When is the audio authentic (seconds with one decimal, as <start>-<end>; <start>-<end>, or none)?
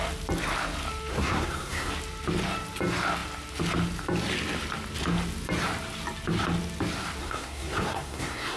0.0-1.1; 1.9-7.2